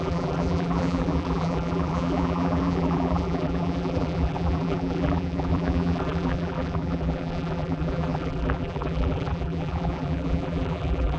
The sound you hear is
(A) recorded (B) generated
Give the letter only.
B